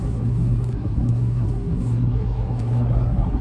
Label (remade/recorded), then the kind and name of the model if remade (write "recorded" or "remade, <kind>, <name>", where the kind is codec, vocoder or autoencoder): remade, codec, SNAC